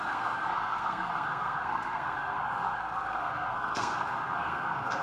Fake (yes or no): yes